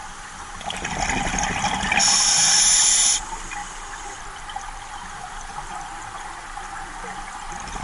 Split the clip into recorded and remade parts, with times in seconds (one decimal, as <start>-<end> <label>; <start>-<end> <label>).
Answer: 0.0-2.0 remade; 2.0-7.8 recorded